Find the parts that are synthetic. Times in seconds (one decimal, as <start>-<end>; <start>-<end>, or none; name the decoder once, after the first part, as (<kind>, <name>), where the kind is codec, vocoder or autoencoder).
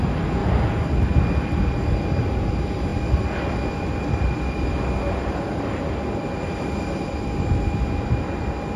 none